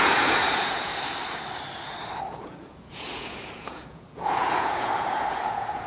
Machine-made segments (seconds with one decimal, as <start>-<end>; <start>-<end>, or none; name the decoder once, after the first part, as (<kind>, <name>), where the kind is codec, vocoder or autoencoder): 0.0-0.9 (vocoder, Vocos); 2.2-5.9